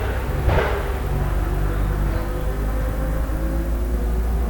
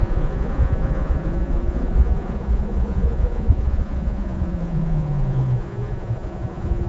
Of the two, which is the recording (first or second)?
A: first